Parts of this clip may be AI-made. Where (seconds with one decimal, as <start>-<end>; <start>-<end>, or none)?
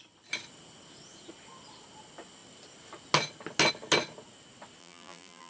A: 4.8-5.5